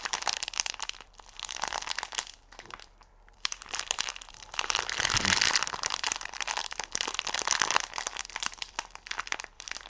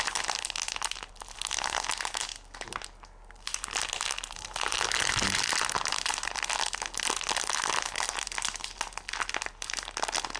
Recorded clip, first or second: second